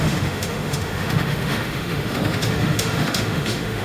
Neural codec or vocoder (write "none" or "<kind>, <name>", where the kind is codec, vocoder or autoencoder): autoencoder, DAC-VAE